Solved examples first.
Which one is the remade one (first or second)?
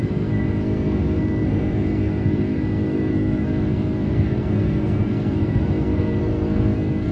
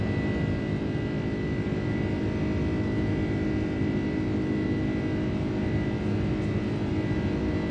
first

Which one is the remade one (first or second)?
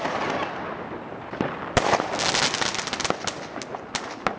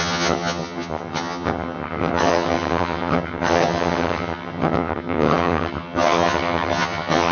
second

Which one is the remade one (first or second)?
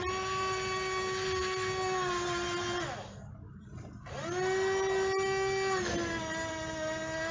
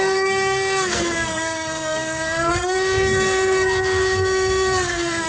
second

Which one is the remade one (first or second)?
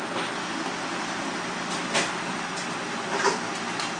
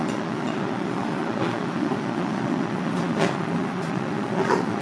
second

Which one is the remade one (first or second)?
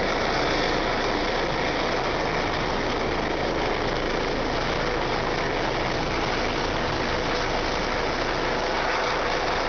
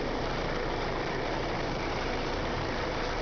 second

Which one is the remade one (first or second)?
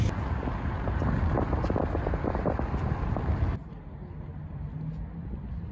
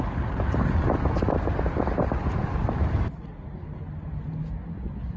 second